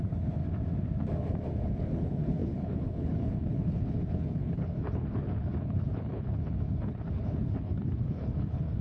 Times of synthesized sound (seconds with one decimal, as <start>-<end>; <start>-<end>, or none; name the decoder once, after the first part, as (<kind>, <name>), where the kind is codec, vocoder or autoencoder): 0.0-0.4 (codec, HILCodec); 1.8-8.8